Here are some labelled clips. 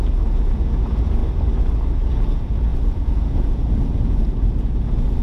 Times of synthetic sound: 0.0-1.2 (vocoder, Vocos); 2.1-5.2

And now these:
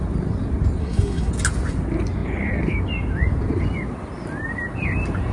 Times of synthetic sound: 0.8-1.3 (codec, SNAC)